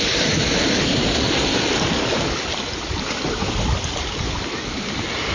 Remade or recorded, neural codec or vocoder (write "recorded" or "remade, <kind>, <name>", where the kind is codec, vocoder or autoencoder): recorded